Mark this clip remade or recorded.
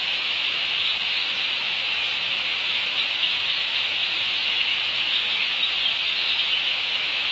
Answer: remade